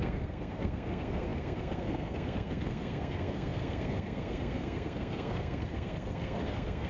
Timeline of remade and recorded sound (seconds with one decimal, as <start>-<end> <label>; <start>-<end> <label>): 0.0-6.9 remade